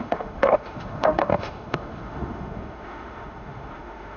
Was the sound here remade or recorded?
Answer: remade